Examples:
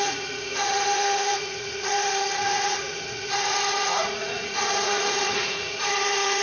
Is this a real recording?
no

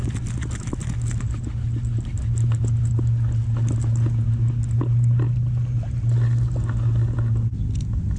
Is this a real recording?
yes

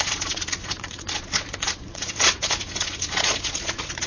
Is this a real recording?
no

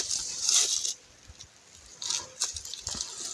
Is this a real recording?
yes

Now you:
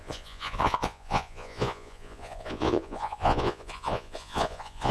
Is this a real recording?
no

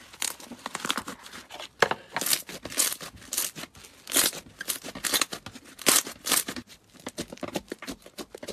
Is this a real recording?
yes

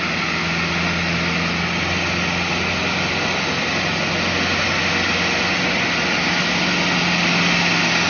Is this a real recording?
yes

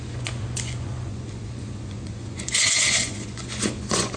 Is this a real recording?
no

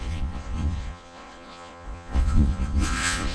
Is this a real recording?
no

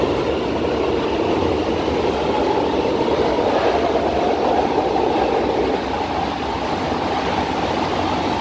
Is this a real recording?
yes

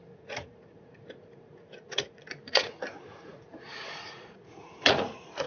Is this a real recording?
no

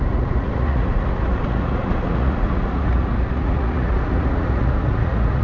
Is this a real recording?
no